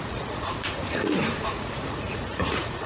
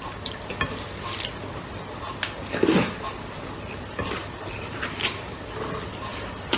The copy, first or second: first